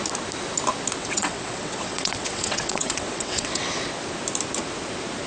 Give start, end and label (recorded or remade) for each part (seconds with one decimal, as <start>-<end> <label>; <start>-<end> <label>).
0.0-1.0 recorded; 1.0-3.6 remade; 3.6-5.3 recorded